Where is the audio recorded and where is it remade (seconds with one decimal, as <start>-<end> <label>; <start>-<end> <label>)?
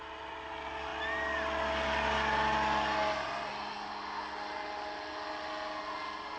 0.0-6.4 recorded